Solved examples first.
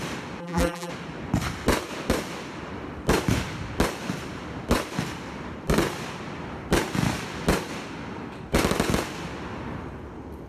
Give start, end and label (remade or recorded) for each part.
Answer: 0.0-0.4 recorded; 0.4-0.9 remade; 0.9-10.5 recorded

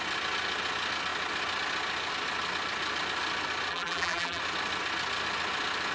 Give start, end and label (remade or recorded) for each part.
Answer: 0.0-3.7 recorded; 3.7-4.4 remade; 4.4-5.9 recorded

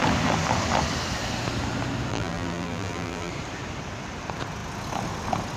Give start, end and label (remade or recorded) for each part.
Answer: 0.0-2.1 recorded; 2.1-3.3 remade; 3.3-5.6 recorded

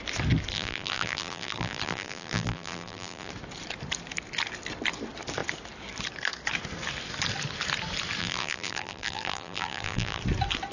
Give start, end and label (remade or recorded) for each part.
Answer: 0.0-0.5 recorded; 0.5-3.3 remade; 3.3-8.2 recorded; 8.2-10.2 remade; 10.2-10.7 recorded

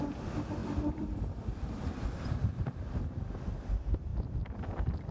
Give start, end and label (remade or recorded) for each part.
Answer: 0.0-0.6 recorded; 0.6-3.0 remade; 3.0-4.1 recorded; 4.1-5.1 remade

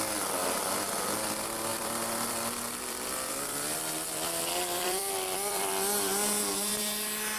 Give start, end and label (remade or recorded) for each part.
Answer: 0.0-0.4 recorded; 0.4-1.2 remade; 1.2-1.7 recorded; 1.7-5.7 remade; 5.7-6.7 recorded; 6.7-7.4 remade